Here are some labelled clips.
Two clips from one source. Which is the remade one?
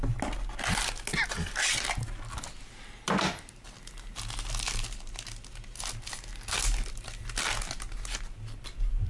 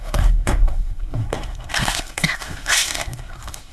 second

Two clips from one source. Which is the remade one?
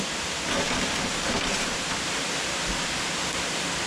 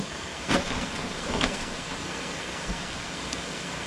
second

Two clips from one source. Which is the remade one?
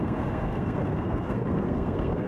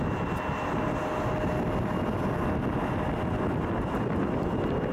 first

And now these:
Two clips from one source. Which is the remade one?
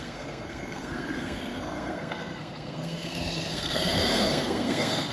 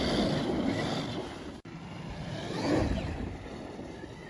first